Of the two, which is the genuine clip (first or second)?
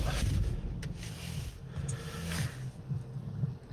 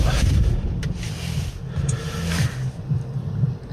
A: first